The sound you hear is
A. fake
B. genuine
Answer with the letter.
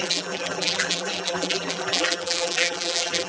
A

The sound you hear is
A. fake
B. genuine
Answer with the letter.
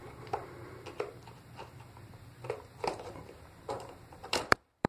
A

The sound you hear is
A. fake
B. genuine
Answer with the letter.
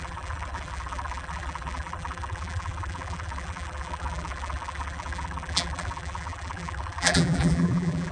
A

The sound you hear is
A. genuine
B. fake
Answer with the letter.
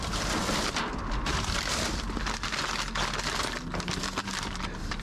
A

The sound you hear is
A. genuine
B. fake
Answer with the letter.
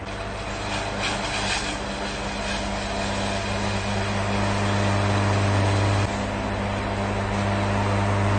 A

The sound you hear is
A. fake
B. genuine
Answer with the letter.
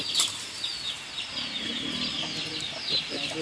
A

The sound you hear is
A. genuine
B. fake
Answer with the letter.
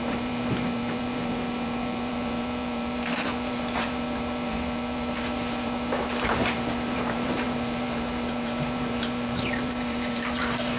B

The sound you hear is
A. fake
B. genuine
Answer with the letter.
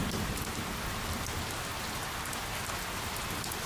B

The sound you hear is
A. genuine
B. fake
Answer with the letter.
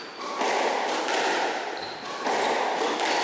A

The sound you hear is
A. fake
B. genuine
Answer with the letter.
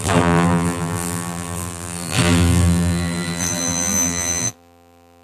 A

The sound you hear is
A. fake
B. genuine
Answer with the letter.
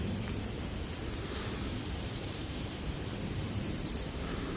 A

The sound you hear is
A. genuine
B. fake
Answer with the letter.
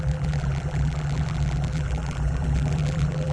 B